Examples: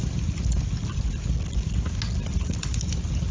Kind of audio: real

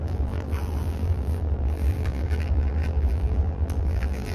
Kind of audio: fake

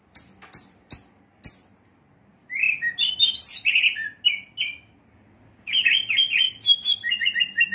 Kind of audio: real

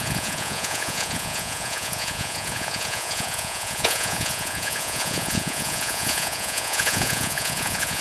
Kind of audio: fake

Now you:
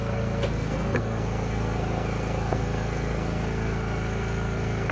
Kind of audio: fake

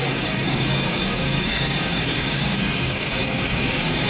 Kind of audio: fake